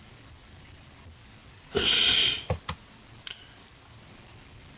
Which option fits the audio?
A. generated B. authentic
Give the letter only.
A